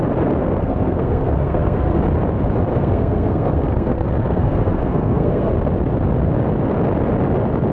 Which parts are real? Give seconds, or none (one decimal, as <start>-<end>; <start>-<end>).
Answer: 0.0-0.4; 2.0-2.7; 5.5-7.7